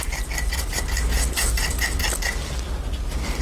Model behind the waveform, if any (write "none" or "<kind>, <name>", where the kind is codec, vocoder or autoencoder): none